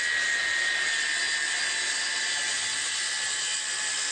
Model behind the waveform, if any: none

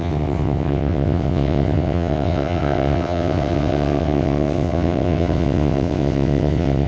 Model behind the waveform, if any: vocoder, WaveNeXt